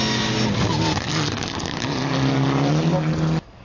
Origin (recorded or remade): recorded